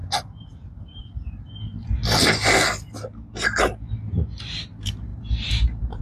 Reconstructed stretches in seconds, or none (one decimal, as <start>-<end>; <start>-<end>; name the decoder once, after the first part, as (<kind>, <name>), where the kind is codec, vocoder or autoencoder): 0.8-2.0 (vocoder, BigVGAN v2); 4.4-6.0